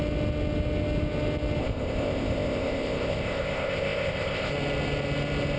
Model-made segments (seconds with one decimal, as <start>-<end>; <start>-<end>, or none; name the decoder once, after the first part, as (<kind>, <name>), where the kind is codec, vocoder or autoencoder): 1.6-4.5 (codec, ZipCodec)

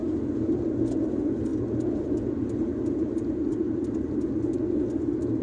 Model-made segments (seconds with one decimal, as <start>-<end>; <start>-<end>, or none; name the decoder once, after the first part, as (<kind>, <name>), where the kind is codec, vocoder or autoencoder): 0.0-0.6 (vocoder, BigVGAN v2)